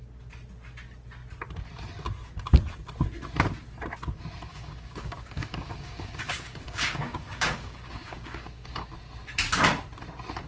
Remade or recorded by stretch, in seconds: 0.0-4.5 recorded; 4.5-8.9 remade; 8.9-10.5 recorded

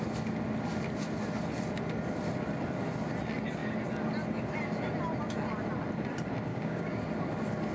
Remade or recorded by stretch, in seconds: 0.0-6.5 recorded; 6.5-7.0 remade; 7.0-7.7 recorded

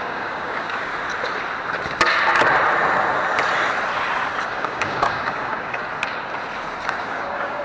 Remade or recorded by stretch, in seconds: 0.0-0.9 remade; 0.9-4.5 recorded; 4.5-5.8 remade; 5.8-7.0 recorded; 7.0-7.6 remade